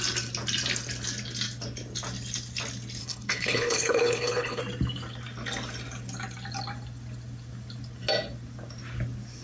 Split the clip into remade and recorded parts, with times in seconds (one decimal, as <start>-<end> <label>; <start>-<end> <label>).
0.0-3.0 recorded; 3.0-4.6 remade; 4.6-9.4 recorded